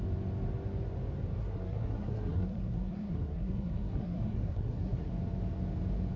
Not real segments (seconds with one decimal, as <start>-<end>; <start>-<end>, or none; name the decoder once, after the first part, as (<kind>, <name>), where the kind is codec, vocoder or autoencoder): 1.4-5.1 (codec, SNAC)